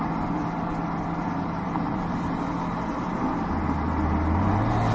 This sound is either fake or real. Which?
real